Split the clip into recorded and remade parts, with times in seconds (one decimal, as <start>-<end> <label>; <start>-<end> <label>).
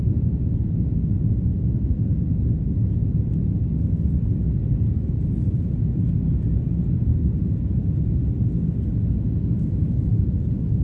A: 0.0-7.1 recorded; 7.1-8.0 remade; 8.0-10.8 recorded